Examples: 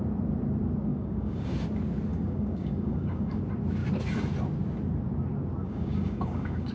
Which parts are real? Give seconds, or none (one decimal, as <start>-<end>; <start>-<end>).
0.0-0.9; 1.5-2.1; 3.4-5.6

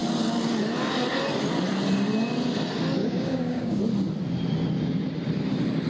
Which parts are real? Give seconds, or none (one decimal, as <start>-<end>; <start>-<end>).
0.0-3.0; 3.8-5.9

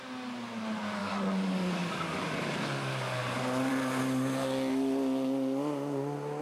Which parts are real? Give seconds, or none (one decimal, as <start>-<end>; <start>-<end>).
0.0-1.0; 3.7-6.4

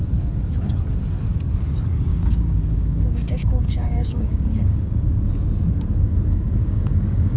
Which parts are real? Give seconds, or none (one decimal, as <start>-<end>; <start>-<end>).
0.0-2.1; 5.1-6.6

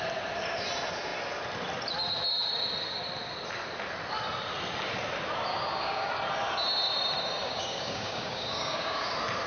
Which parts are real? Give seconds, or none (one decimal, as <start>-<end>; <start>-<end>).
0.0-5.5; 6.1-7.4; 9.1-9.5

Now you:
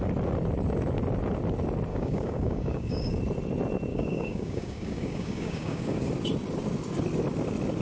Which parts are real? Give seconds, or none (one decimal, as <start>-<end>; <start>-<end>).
0.0-1.9; 3.2-3.9; 6.1-7.8

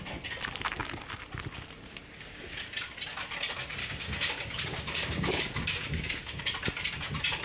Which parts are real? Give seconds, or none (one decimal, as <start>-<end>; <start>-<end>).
0.0-3.8; 6.4-7.4

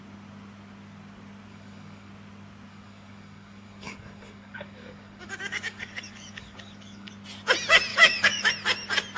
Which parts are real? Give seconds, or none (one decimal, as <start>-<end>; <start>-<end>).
0.0-1.5; 2.1-2.7; 7.1-7.9; 8.5-9.2